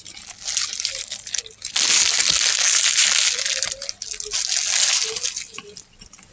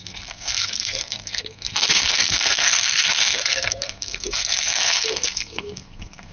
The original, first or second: first